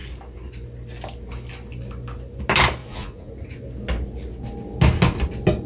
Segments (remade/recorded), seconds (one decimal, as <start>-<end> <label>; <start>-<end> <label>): 0.0-2.8 recorded; 2.8-3.3 remade; 3.3-5.7 recorded